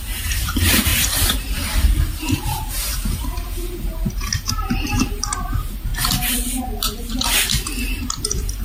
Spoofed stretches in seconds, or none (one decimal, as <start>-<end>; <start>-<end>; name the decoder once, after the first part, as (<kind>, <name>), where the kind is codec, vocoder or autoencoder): 0.0-5.9 (vocoder, BigVGAN v2); 7.9-8.6